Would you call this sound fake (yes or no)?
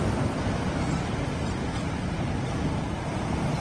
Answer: no